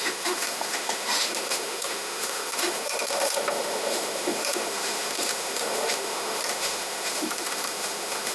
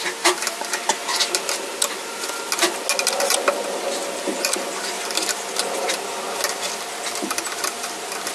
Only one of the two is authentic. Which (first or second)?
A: second